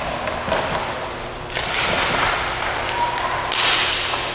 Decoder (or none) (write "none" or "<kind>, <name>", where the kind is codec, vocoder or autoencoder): none